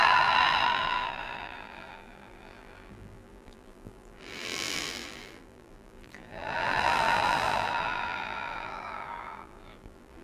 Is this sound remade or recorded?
remade